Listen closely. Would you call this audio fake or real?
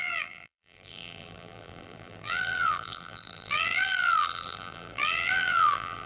fake